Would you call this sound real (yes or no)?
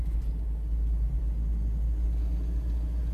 yes